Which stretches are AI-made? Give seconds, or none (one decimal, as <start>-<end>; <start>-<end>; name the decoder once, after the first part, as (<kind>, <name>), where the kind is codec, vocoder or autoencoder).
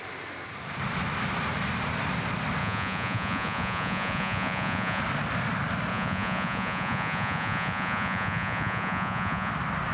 2.6-5.0 (vocoder, Vocos); 5.9-9.5